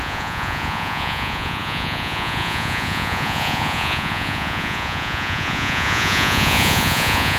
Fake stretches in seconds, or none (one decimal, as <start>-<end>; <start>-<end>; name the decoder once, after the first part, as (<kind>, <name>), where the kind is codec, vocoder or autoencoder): 0.0-7.4 (vocoder, Vocos)